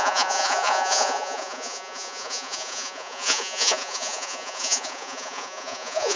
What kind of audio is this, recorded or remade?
remade